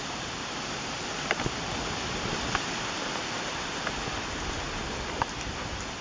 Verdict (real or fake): fake